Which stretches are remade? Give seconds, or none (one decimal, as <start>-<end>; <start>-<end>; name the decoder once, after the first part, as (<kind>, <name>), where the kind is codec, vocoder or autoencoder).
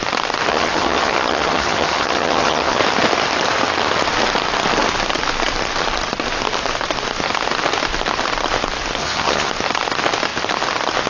0.5-2.8 (vocoder, HiFi-GAN); 9.0-9.5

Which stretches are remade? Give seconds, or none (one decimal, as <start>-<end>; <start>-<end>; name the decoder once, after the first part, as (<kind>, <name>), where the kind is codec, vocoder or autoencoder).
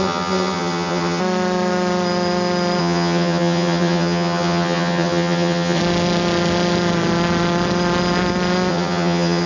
0.0-1.2 (vocoder, HiFi-GAN); 2.8-5.8; 8.7-9.5